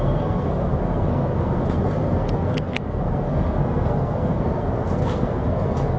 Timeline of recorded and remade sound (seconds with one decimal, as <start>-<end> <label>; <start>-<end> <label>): 0.0-6.0 remade